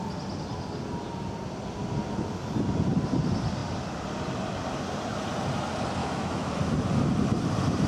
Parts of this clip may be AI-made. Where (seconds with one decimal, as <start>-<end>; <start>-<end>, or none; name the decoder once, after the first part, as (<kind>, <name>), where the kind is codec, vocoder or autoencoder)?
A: 6.0-6.5 (autoencoder, DAC-VAE)